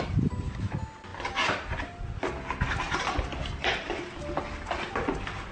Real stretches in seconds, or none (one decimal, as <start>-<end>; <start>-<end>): 0.0-5.5